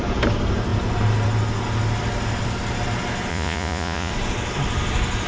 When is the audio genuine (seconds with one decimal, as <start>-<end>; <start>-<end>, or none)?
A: 0.0-3.3; 4.1-5.3